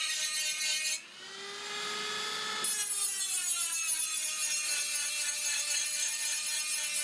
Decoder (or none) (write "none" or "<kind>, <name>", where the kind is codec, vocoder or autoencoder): none